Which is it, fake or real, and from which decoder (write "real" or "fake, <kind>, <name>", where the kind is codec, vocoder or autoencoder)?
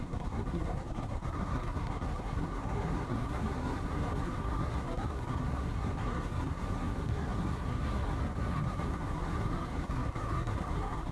fake, codec, SNAC